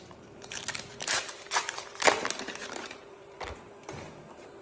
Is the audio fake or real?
fake